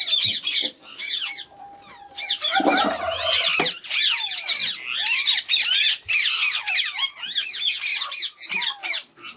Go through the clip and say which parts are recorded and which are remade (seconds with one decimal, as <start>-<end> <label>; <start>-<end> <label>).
0.0-9.4 recorded